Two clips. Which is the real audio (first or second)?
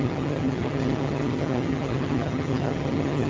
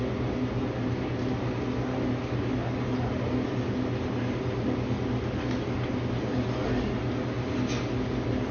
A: second